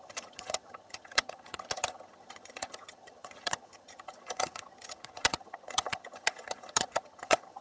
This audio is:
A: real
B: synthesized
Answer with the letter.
B